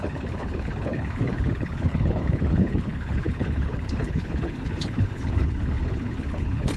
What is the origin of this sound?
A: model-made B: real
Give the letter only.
A